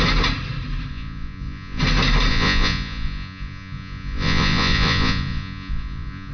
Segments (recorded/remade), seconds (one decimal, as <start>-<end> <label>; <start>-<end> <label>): 0.0-0.9 recorded; 0.9-1.8 remade; 1.8-2.3 recorded; 2.3-6.3 remade